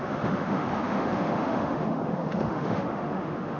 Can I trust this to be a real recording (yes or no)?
no